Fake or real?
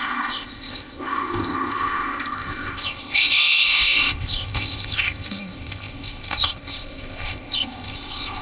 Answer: fake